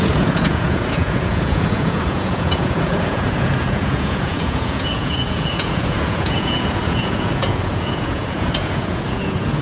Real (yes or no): no